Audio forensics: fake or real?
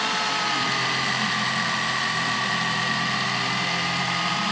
fake